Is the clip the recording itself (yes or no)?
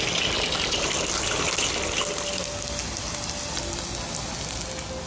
yes